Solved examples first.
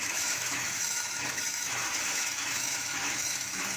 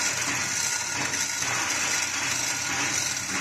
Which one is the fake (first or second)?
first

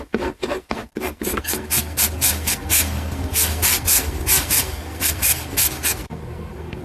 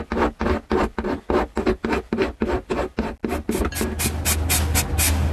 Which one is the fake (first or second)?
first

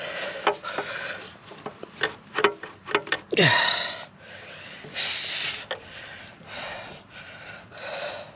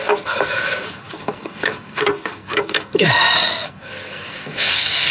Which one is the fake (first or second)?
second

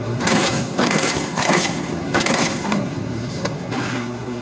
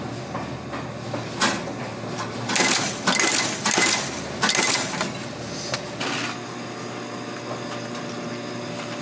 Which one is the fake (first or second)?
first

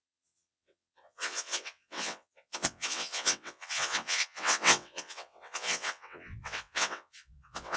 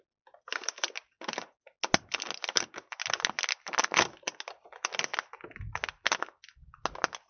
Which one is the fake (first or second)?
first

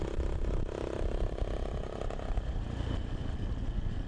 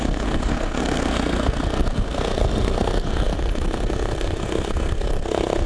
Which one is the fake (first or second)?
second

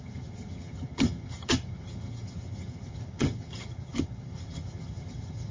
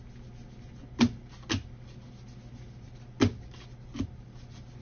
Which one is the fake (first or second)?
first